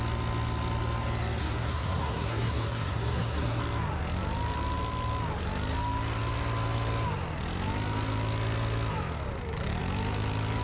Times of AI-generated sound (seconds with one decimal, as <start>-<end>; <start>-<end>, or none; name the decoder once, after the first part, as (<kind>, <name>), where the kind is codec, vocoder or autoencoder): 1.4-3.6 (codec, SNAC)